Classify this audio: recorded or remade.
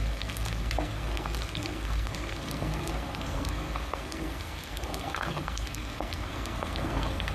remade